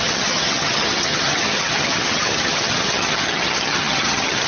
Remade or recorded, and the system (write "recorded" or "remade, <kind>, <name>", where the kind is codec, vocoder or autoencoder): remade, vocoder, HiFi-GAN